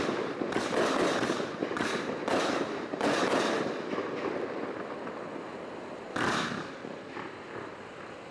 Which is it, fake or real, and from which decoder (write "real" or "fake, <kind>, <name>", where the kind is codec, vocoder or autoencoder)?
real